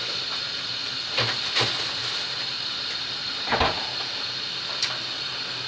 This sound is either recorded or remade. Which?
remade